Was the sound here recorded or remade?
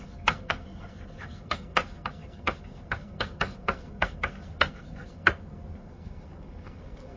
remade